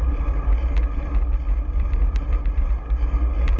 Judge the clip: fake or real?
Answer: real